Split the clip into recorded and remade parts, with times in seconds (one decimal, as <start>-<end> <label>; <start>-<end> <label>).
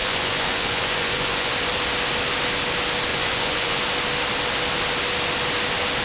0.0-1.5 remade; 1.5-3.1 recorded; 3.1-3.8 remade; 3.8-6.0 recorded